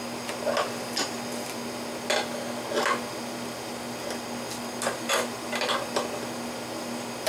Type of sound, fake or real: real